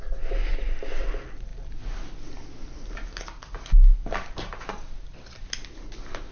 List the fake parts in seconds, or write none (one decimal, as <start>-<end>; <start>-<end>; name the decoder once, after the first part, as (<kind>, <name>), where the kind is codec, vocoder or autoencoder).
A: 0.5-1.0 (vocoder, BigVGAN v2)

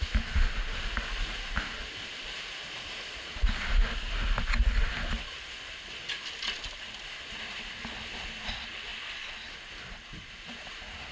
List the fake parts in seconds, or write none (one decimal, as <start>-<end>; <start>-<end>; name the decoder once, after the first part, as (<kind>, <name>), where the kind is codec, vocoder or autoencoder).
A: none

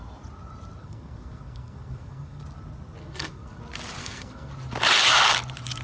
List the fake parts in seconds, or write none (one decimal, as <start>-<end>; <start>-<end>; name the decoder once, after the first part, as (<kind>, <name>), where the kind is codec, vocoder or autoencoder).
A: 0.8-2.4 (codec, SNAC); 3.0-3.6; 4.0-4.5

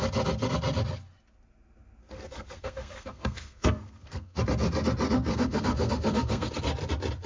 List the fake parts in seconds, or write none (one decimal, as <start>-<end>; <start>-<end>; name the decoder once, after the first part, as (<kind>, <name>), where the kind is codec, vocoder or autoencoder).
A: 2.0-4.4 (codec, SNAC); 5.3-6.5

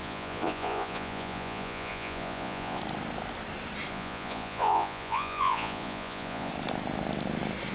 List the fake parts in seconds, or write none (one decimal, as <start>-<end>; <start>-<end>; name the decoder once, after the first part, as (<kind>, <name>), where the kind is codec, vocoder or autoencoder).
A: 0.0-2.8 (vocoder, Vocos); 3.9-6.5